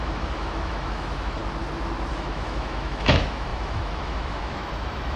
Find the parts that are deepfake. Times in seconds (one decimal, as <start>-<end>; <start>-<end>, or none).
0.0-1.4; 2.1-5.2

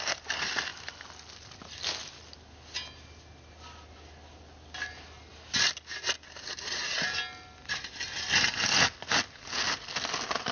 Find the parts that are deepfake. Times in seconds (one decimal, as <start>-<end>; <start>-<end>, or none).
none

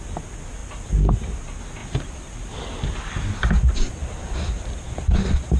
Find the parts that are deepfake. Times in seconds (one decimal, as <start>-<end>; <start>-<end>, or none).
none

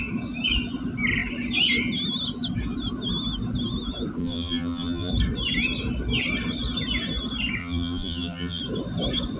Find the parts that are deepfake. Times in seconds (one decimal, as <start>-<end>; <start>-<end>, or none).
4.2-5.1; 7.6-8.6

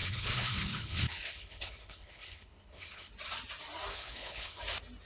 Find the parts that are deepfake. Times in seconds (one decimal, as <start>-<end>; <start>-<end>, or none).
0.0-3.1; 3.9-4.6

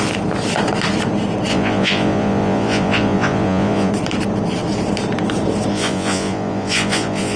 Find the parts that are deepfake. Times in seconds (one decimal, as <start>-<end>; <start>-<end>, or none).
1.5-3.9; 5.7-7.4

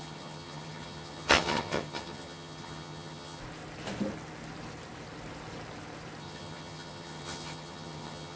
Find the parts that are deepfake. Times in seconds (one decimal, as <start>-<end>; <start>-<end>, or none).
0.0-3.4; 6.2-8.4